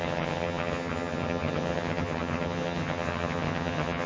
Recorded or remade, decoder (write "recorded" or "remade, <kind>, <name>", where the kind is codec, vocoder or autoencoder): remade, vocoder, HiFi-GAN